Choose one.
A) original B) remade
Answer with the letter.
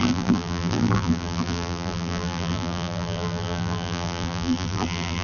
B